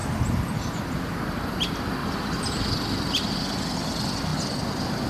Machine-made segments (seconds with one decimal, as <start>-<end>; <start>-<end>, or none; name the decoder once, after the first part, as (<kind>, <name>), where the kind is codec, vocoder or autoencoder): 2.0-3.1 (vocoder, BigVGAN v2)